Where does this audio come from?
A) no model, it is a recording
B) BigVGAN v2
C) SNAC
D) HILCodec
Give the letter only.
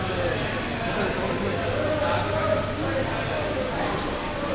A